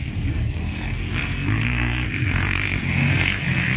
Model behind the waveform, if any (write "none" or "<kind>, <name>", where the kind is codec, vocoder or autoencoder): codec, SNAC